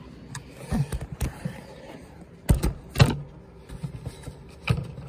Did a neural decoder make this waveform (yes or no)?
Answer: no